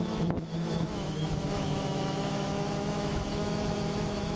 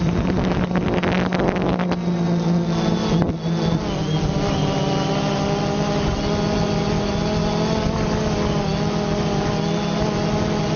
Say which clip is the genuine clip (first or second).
second